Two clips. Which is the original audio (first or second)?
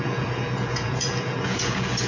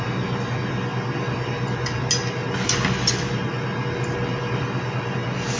second